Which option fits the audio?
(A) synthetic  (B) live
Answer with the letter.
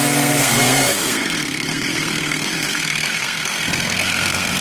A